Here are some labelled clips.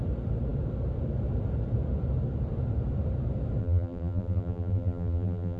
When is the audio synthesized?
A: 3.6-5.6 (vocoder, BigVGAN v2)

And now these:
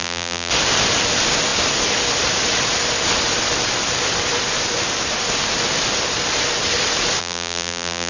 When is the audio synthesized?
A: 0.0-0.5 (vocoder, BigVGAN v2); 7.2-8.1